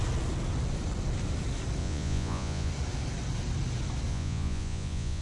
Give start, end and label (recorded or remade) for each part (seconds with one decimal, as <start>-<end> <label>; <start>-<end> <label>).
0.0-1.8 recorded; 1.8-2.7 remade; 2.7-4.1 recorded; 4.1-5.2 remade